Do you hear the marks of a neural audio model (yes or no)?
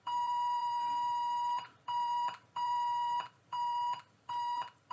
yes